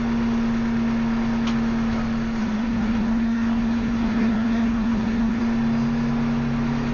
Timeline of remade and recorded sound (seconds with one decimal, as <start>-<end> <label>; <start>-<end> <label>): 0.0-2.4 recorded; 2.4-5.4 remade; 5.4-6.9 recorded